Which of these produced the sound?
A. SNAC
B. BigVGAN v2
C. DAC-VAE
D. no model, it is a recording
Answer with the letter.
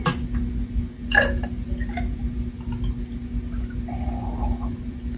D